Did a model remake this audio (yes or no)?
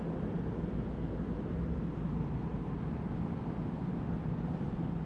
no